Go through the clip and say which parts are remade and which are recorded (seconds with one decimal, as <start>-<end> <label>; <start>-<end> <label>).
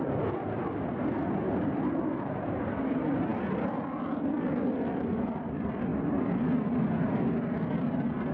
0.0-5.9 remade; 5.9-8.3 recorded